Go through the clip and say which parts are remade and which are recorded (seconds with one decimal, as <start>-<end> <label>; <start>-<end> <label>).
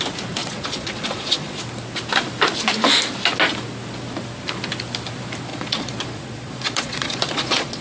0.0-0.4 recorded; 0.4-1.6 remade; 1.6-5.5 recorded; 5.5-7.8 remade